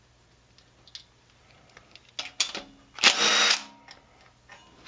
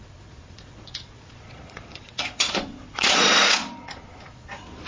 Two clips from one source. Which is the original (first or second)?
first